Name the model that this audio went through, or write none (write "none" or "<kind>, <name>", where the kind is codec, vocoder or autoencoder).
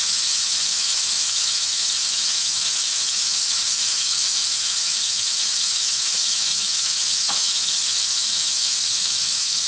autoencoder, DAC-VAE